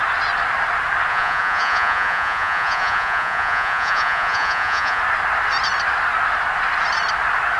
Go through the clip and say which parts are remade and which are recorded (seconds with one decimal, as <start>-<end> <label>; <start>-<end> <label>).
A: 0.0-1.1 recorded; 1.1-5.0 remade; 5.0-7.6 recorded